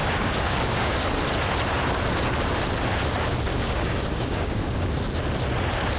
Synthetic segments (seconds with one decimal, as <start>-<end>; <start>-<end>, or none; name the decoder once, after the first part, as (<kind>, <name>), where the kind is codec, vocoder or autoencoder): 0.0-0.9 (codec, DAC); 3.5-4.9